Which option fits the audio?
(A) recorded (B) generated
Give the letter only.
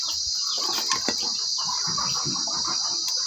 A